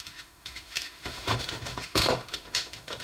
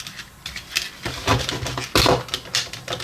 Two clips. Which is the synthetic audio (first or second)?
first